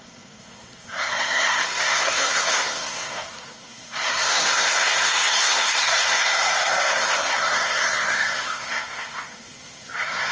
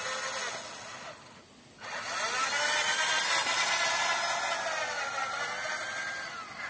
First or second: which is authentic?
second